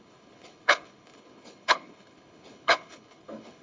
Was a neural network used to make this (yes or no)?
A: yes